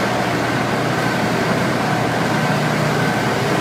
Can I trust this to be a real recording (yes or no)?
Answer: yes